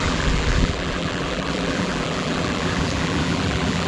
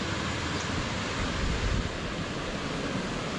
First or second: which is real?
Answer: second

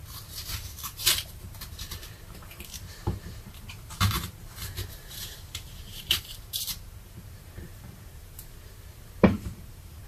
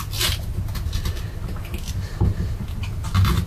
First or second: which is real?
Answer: second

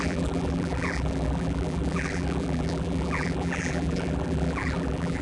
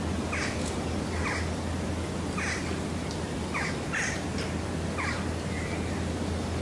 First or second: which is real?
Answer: second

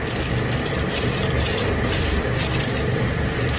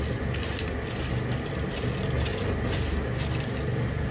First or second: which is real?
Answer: second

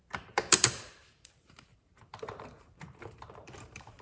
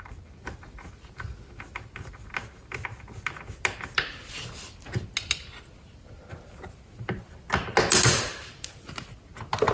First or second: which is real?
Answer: second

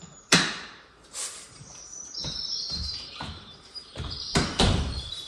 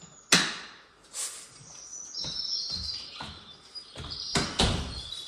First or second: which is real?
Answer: second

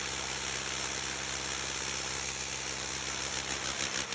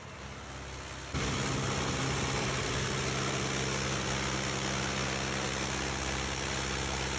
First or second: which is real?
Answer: second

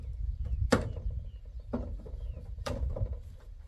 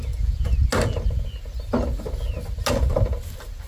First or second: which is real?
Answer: second